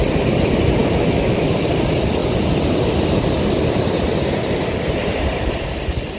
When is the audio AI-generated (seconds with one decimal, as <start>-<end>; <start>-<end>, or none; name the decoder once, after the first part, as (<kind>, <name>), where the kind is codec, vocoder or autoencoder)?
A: 0.8-1.4 (autoencoder, DAC-VAE)